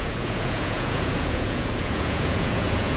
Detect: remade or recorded remade